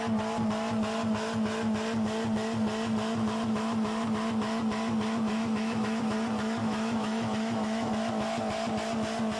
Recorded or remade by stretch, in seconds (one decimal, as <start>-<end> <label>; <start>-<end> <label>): 0.0-5.3 recorded; 5.3-6.1 remade; 6.1-6.6 recorded; 6.6-7.9 remade; 7.9-9.4 recorded